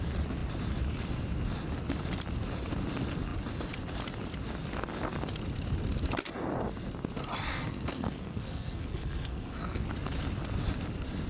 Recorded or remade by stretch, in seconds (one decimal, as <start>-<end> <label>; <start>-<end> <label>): 0.0-7.5 recorded; 7.5-9.9 remade; 9.9-11.3 recorded

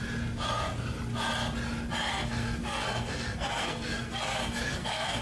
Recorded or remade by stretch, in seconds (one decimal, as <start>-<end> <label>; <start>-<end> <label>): 0.0-2.1 recorded; 2.1-5.2 remade

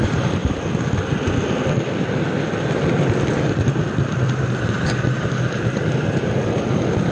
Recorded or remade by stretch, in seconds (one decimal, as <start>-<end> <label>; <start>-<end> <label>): 0.0-0.4 remade; 0.4-4.7 recorded; 4.7-5.8 remade; 5.8-7.1 recorded

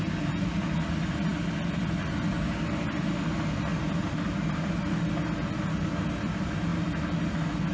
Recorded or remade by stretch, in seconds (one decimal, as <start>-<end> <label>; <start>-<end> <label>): 0.0-7.7 recorded

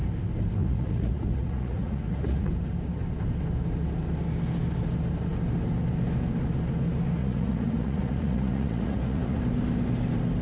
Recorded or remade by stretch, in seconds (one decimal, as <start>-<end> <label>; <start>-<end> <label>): 0.0-0.6 recorded; 0.6-2.5 remade; 2.5-7.2 recorded; 7.2-9.4 remade; 9.4-10.4 recorded

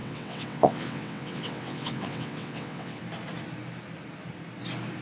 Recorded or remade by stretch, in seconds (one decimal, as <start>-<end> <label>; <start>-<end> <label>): 0.0-3.0 remade; 3.0-5.0 recorded

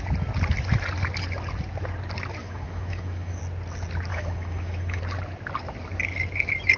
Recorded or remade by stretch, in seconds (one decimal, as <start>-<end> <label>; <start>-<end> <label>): 0.0-2.4 recorded; 2.4-3.4 remade; 3.4-4.1 recorded; 4.1-5.0 remade; 5.0-6.8 recorded